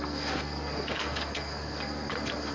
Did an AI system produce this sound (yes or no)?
yes